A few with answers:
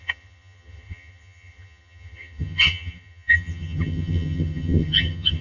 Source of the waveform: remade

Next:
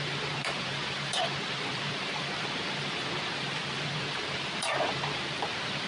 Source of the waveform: remade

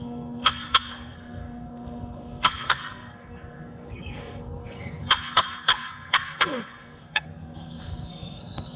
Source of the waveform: remade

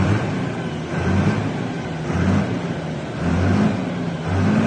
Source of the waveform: recorded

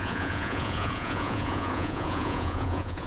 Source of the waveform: remade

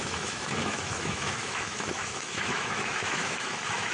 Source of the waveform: remade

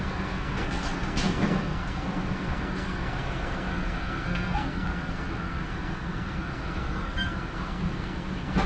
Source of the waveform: remade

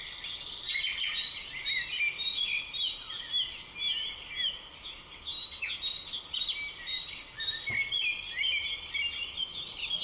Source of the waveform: recorded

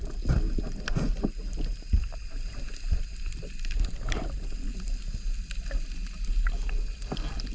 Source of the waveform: recorded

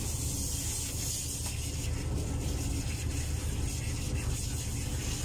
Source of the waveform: recorded